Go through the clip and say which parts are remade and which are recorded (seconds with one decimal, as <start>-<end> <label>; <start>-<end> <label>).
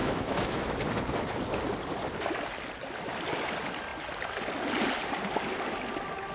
0.0-0.8 remade; 0.8-6.3 recorded